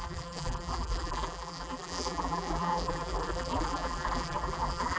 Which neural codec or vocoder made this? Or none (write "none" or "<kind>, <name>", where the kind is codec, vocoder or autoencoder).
vocoder, BigVGAN v2